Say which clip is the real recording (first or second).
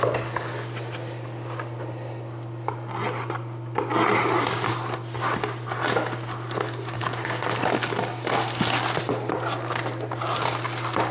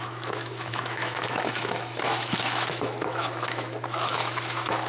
first